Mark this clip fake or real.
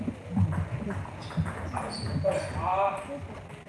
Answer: real